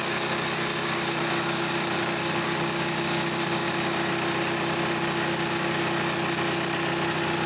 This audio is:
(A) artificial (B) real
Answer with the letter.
B